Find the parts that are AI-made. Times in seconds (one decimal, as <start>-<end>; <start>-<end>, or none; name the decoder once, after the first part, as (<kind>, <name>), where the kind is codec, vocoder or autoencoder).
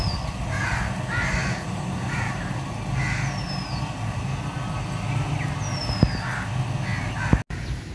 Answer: 1.4-2.5 (vocoder, BigVGAN v2)